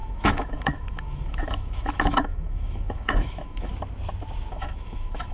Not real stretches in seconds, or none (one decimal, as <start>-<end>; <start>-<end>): 0.0-3.7; 4.5-5.3